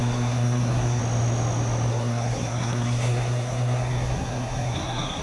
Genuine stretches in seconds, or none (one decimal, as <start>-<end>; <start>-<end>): 1.0-1.9